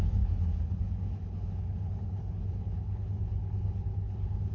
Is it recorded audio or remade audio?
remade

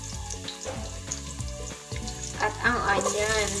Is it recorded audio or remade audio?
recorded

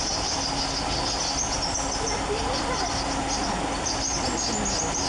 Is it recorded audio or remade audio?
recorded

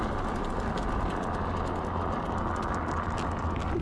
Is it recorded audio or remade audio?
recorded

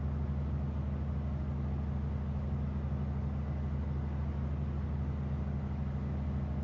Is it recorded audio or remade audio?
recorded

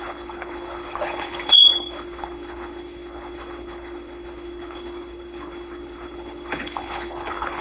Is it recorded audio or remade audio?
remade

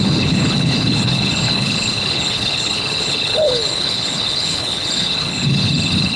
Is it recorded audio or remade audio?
remade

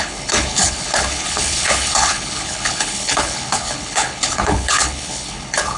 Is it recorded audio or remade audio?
remade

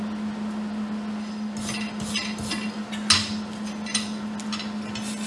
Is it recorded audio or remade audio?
recorded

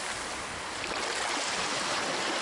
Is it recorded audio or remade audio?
recorded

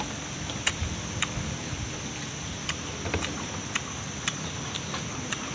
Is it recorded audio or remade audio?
recorded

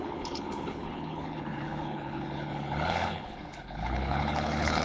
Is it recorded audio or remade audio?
remade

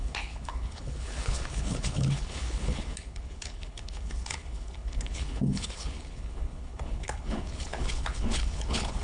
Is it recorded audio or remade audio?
remade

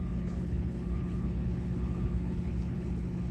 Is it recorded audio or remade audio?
remade